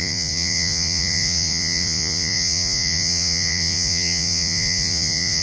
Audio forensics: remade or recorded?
remade